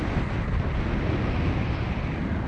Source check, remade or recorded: recorded